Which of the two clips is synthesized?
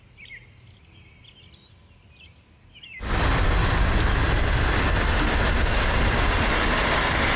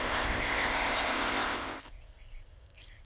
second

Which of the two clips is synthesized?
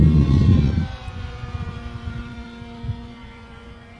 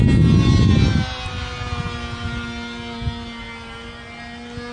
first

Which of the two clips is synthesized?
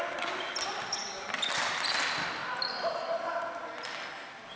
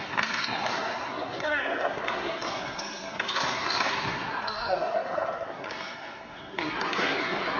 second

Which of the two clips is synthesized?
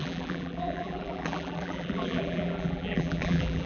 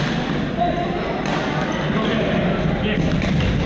first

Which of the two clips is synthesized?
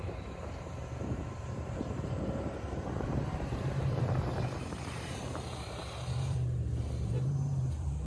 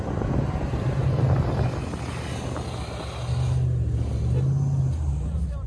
first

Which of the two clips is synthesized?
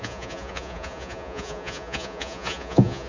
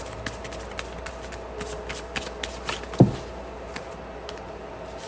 first